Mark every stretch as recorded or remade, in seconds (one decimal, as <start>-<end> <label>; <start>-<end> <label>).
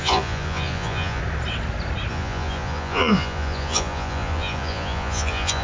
0.0-1.2 remade; 1.2-2.1 recorded; 2.1-5.6 remade